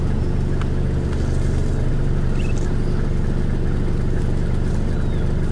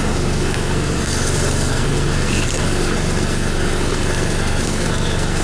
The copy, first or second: second